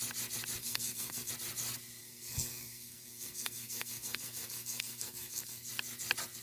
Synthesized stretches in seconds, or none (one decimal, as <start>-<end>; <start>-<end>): 0.6-1.3; 2.0-5.7